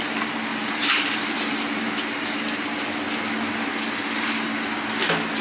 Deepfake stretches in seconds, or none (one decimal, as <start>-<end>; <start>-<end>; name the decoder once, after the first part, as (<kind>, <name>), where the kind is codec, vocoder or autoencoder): 0.5-1.8 (vocoder, BigVGAN v2)